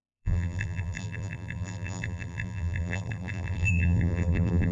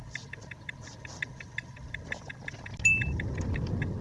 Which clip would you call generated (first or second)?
first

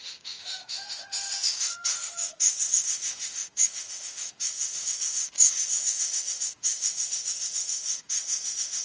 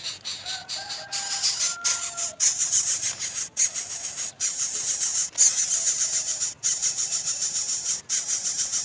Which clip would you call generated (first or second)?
first